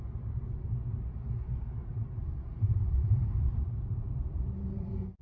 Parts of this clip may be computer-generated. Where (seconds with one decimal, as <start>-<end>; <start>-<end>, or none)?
1.8-5.2